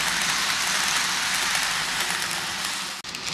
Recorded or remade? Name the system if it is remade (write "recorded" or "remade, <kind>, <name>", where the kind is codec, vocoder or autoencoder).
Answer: recorded